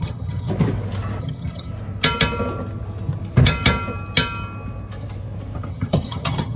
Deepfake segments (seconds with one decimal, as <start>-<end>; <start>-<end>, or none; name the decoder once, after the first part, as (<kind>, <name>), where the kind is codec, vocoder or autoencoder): 0.0-0.5 (vocoder, HiFi-GAN); 1.2-1.7; 5.7-6.6